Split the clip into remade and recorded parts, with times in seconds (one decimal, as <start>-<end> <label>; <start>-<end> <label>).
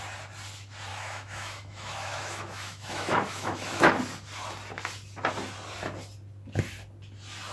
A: 0.0-0.9 recorded; 0.9-3.9 remade; 3.9-7.5 recorded